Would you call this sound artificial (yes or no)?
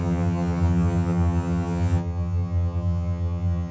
yes